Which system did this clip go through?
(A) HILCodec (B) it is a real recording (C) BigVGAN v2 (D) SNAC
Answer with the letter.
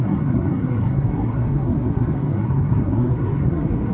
D